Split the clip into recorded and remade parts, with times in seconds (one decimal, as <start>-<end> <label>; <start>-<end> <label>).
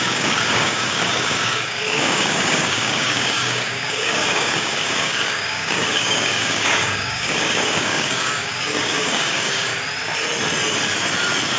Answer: 0.0-9.7 remade; 9.7-11.6 recorded